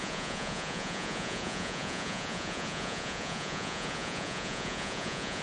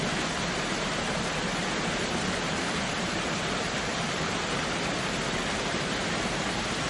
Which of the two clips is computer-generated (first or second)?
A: first